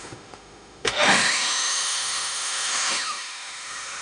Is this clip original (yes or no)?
no